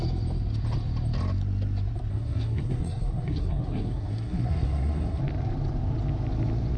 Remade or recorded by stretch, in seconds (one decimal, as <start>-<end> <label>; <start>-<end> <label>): 0.0-2.1 recorded; 2.1-5.2 remade; 5.2-6.8 recorded

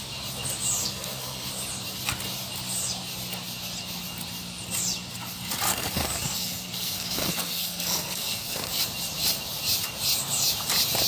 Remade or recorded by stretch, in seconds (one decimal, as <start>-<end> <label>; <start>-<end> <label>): 0.0-0.8 recorded; 0.8-1.5 remade; 1.5-5.7 recorded; 5.7-8.8 remade; 8.8-11.1 recorded

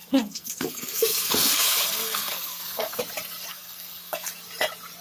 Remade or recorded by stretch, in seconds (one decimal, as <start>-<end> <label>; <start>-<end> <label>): 0.0-3.0 remade; 3.0-3.5 recorded; 3.5-4.3 remade; 4.3-5.0 recorded

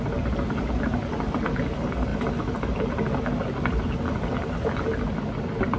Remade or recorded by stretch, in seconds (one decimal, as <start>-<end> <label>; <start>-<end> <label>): 0.0-5.8 recorded

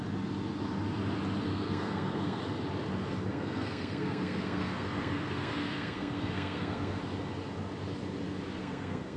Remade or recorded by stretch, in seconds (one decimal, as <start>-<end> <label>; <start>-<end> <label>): 0.0-1.5 recorded; 1.5-2.4 remade; 2.4-3.3 recorded; 3.3-7.0 remade; 7.0-8.6 recorded; 8.6-9.2 remade

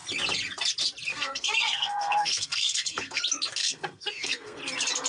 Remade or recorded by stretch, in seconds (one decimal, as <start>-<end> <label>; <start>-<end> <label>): 0.0-1.1 recorded; 1.1-3.2 remade; 3.2-3.6 recorded; 3.6-4.6 remade; 4.6-5.1 recorded

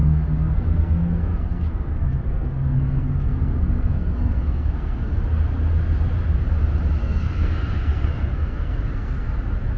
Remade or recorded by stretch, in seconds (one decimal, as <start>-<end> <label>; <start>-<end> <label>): 0.0-5.2 remade; 5.2-7.0 recorded; 7.0-9.3 remade; 9.3-9.8 recorded

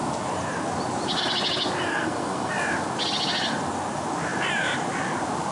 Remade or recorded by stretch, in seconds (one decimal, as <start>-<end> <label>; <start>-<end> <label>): 0.0-1.9 recorded; 1.9-2.5 remade; 2.5-5.5 recorded